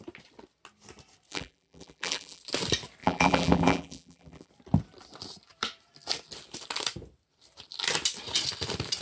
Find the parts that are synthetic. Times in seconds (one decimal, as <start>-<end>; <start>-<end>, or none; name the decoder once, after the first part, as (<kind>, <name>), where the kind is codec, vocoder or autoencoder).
1.3-2.4 (vocoder, BigVGAN v2); 3.0-4.5